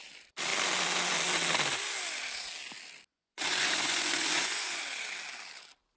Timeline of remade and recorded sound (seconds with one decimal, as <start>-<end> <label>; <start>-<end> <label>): 0.0-3.1 recorded; 3.1-4.8 remade; 4.8-6.0 recorded